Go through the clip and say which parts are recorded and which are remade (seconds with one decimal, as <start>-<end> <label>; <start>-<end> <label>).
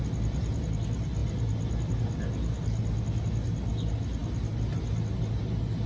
0.0-5.9 recorded